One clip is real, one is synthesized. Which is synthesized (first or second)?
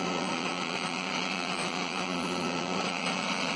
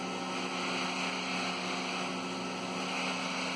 first